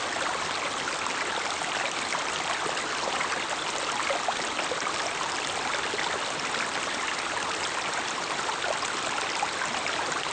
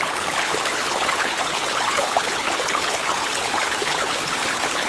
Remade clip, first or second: second